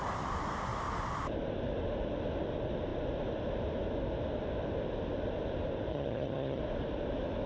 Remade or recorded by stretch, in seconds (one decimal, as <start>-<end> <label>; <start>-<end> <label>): 0.0-5.9 recorded; 5.9-6.6 remade; 6.6-7.5 recorded

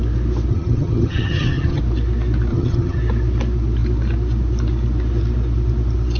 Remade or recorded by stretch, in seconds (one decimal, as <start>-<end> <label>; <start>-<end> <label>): 0.0-0.5 recorded; 0.5-1.8 remade; 1.8-2.5 recorded; 2.5-3.0 remade; 3.0-6.2 recorded

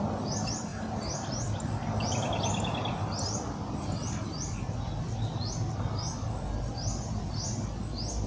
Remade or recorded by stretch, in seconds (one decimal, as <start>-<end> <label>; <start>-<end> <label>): 0.0-8.3 recorded

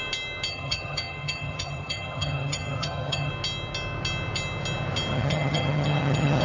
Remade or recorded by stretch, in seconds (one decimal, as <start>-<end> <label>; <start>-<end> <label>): 0.0-0.5 recorded; 0.5-3.3 remade; 3.3-5.1 recorded; 5.1-6.4 remade

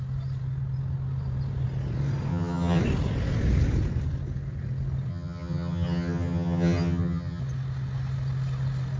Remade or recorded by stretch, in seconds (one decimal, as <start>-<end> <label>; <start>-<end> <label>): 0.0-2.3 recorded; 2.3-2.8 remade; 2.8-5.1 recorded; 5.1-7.4 remade; 7.4-9.0 recorded

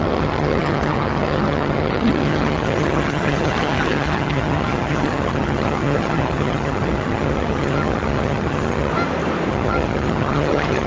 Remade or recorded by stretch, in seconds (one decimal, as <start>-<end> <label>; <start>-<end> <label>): 0.0-8.9 remade; 8.9-9.5 recorded; 9.5-10.9 remade

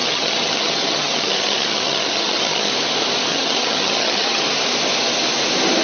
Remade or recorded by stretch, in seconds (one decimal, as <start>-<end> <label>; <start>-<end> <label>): 0.0-2.7 remade; 2.7-3.3 recorded; 3.3-4.4 remade; 4.4-5.8 recorded